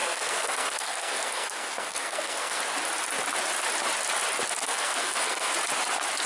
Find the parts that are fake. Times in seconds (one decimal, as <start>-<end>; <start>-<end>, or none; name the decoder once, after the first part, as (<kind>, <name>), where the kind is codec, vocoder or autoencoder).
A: 0.0-2.6 (codec, SNAC); 4.6-5.5